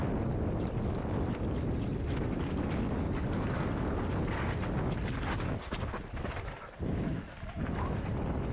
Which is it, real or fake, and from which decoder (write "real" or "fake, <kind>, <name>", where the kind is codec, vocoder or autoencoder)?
real